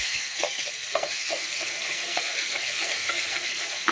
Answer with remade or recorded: remade